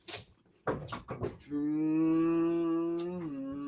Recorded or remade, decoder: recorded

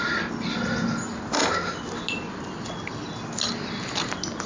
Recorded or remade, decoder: recorded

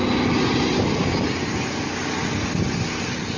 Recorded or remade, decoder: recorded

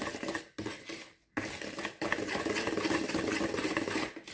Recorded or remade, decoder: recorded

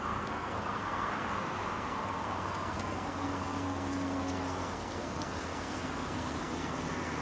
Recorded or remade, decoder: remade, codec, SNAC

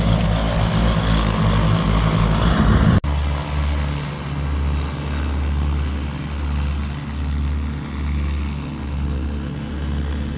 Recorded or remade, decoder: recorded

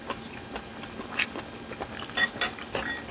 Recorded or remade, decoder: recorded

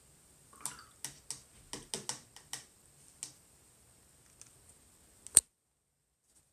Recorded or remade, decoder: recorded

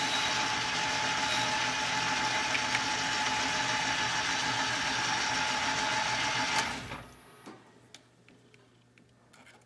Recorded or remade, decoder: recorded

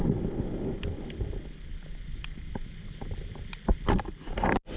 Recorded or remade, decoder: recorded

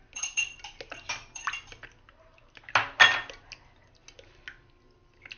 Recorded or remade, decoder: recorded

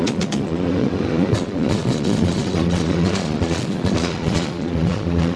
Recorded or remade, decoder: remade, vocoder, Vocos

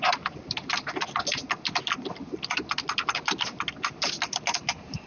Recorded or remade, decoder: recorded